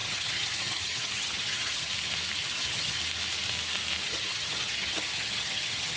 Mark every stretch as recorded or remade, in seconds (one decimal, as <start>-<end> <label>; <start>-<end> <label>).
0.0-1.9 remade; 1.9-2.4 recorded; 2.4-3.0 remade; 3.0-4.0 recorded; 4.0-6.0 remade

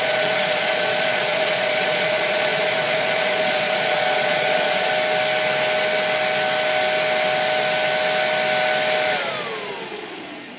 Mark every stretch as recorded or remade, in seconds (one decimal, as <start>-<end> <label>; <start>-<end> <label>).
0.0-4.9 remade; 4.9-9.9 recorded; 9.9-10.6 remade

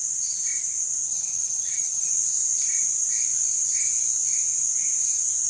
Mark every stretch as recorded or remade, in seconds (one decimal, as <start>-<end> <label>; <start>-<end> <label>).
0.0-1.1 recorded; 1.1-2.1 remade; 2.1-5.5 recorded

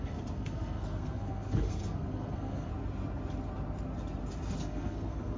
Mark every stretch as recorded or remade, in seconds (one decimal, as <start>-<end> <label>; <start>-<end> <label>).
0.0-2.7 remade; 2.7-4.6 recorded; 4.6-5.4 remade

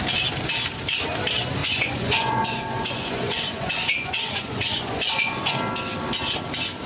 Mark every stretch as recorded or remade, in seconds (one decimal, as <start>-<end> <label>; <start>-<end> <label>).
0.0-1.6 recorded; 1.6-5.5 remade; 5.5-6.9 recorded